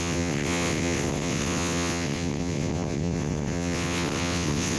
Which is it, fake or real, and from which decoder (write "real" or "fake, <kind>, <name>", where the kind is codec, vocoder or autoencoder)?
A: fake, vocoder, WaveNeXt